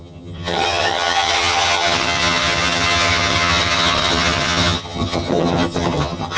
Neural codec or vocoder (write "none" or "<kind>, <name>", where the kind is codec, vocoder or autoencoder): vocoder, HiFi-GAN